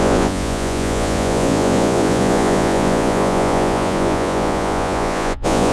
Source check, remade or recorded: remade